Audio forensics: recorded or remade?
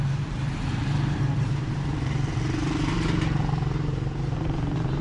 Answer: remade